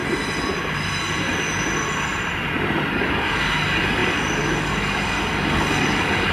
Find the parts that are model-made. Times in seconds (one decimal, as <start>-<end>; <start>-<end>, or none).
2.9-6.3